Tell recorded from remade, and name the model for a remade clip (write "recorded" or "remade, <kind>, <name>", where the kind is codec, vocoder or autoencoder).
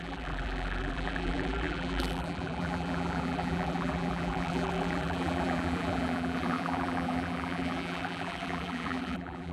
remade, vocoder, BigVGAN v2